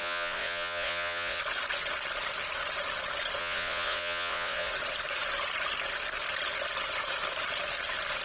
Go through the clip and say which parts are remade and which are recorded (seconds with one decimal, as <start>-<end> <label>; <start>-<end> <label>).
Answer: 0.0-1.4 remade; 1.4-3.4 recorded; 3.4-4.7 remade; 4.7-8.2 recorded